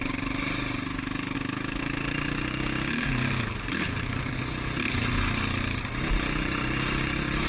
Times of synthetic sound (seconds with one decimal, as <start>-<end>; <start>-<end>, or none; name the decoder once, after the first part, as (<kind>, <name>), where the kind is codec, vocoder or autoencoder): 0.9-1.8 (autoencoder, DAC-VAE)